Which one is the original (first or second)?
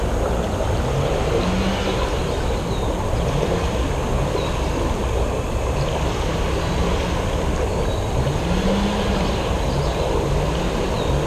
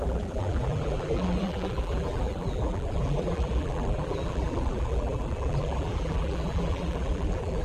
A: first